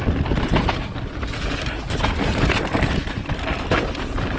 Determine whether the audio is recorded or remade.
recorded